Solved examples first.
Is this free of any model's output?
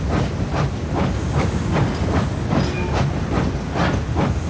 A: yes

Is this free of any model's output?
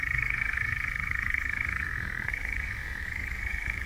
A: no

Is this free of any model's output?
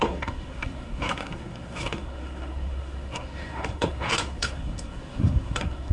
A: no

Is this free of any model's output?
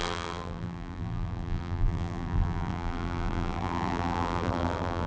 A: no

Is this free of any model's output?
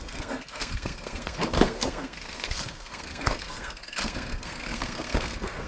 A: no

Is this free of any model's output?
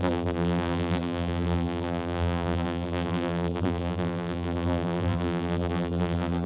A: no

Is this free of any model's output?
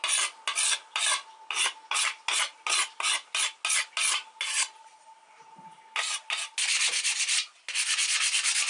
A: yes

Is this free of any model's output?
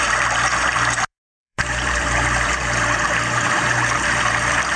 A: no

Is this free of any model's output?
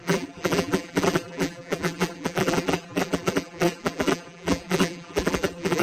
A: no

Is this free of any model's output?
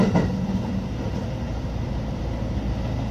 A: yes